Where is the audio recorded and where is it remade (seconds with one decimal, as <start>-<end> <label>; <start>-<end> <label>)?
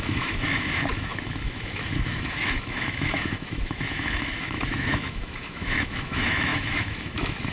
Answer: 0.0-7.5 remade